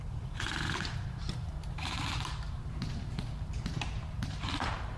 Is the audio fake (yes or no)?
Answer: yes